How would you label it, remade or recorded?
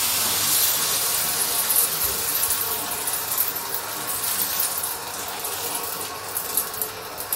recorded